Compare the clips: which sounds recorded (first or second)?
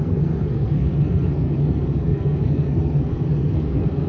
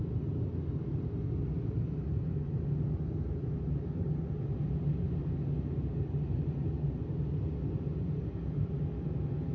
second